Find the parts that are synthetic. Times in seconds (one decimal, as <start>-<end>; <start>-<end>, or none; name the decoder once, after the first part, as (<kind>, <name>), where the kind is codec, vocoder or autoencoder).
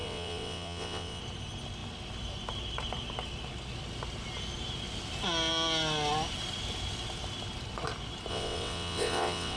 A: 0.0-1.2 (vocoder, WaveNeXt); 8.3-9.6